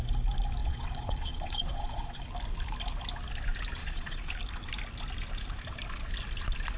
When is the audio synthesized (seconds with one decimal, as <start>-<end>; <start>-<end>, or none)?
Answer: 0.6-2.2; 3.8-4.3